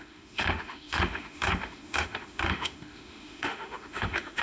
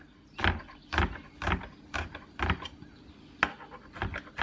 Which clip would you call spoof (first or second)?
first